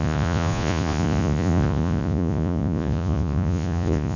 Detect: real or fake fake